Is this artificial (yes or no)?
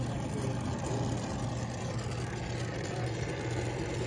no